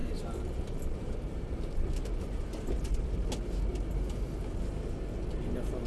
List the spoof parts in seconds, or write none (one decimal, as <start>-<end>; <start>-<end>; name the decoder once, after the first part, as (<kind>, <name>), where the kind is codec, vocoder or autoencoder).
0.0-2.4 (vocoder, BigVGAN v2)